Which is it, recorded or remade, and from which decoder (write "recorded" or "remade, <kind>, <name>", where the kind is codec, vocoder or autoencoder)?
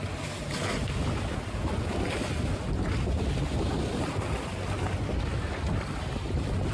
recorded